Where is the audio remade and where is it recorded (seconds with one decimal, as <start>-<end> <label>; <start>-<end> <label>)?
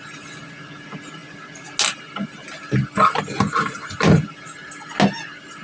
0.0-5.6 recorded